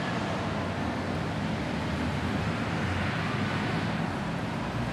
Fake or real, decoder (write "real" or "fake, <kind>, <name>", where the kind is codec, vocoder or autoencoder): real